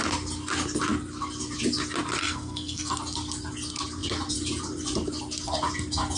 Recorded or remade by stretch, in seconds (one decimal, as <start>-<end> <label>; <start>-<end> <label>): 0.0-2.2 recorded; 2.2-2.9 remade; 2.9-6.2 recorded